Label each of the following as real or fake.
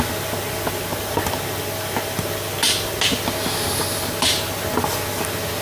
real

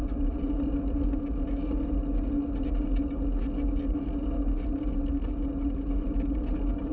real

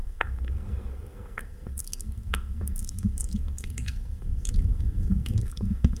fake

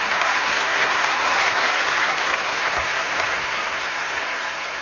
fake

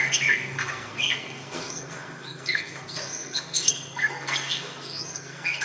fake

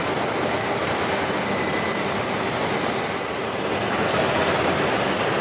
real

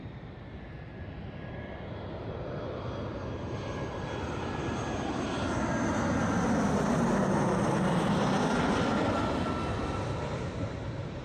real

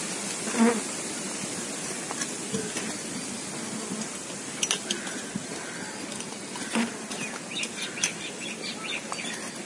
real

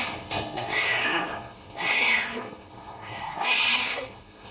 fake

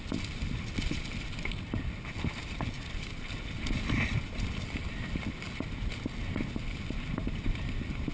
real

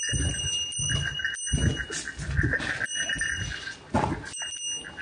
real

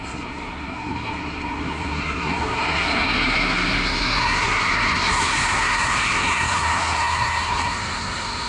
fake